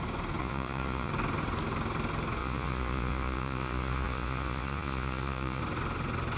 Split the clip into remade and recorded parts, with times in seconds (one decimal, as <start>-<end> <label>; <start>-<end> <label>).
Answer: 0.0-0.4 recorded; 0.4-1.1 remade; 1.1-2.4 recorded; 2.4-5.6 remade; 5.6-6.4 recorded